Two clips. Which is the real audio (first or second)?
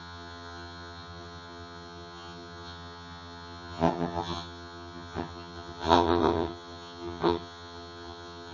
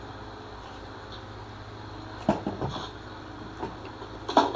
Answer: second